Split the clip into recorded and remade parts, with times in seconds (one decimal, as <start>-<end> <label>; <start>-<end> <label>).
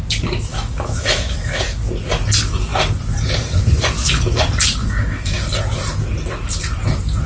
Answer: 0.0-0.5 recorded; 0.5-1.6 remade; 1.6-4.8 recorded; 4.8-5.4 remade; 5.4-7.3 recorded